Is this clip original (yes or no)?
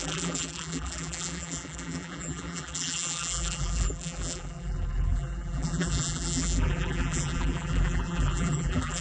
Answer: no